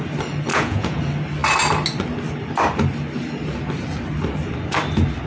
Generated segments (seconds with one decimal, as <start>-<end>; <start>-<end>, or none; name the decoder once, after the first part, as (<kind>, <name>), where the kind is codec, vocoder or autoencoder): 0.5-1.0 (vocoder, Vocos)